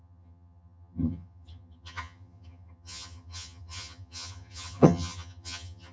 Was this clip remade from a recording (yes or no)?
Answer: yes